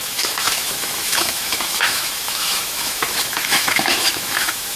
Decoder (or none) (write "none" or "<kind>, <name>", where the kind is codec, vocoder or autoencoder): autoencoder, DAC-VAE